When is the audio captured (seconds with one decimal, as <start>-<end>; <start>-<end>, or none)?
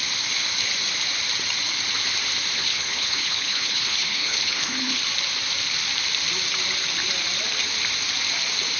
0.0-2.6; 5.0-8.8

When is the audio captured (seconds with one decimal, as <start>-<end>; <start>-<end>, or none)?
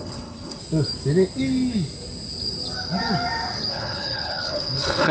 0.6-3.7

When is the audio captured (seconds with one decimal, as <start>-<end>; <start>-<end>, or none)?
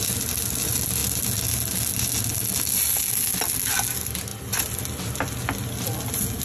0.0-6.4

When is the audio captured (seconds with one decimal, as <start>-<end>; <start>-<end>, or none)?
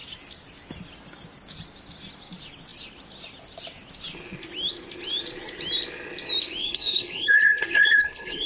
0.0-6.6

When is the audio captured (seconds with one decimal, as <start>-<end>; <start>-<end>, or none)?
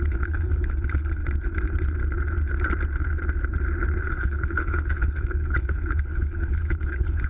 1.2-4.0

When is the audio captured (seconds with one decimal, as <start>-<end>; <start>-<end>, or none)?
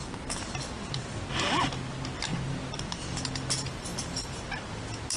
0.0-5.2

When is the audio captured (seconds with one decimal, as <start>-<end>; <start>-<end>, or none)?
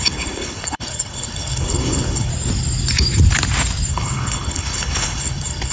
2.3-3.9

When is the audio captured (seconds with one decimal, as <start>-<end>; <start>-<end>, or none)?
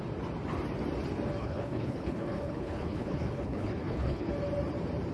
0.0-1.4; 4.3-5.1